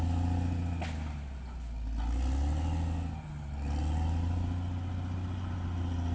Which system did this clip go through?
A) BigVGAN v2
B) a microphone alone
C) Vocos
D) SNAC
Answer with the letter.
B